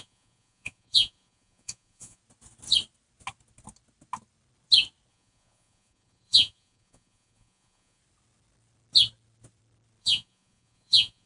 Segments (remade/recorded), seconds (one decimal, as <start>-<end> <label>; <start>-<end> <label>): 0.0-2.2 remade; 2.2-5.1 recorded; 5.1-8.0 remade; 8.0-10.0 recorded; 10.0-11.3 remade